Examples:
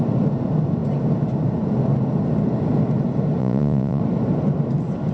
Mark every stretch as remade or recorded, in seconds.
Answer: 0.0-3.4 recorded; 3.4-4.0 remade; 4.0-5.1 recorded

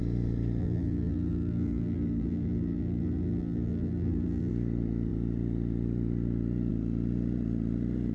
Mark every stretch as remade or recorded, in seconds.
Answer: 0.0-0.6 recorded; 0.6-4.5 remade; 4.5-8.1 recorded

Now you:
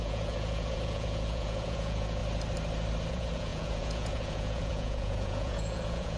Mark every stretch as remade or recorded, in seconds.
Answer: 0.0-2.2 remade; 2.2-3.1 recorded; 3.1-6.2 remade

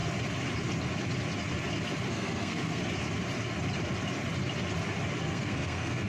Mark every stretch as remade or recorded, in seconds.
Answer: 0.0-2.1 recorded; 2.1-2.8 remade; 2.8-5.2 recorded; 5.2-6.1 remade